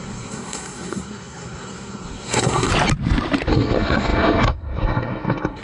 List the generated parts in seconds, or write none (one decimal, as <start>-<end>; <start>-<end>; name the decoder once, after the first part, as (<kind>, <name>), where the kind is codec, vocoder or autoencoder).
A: 0.0-2.7 (codec, SNAC); 3.5-5.6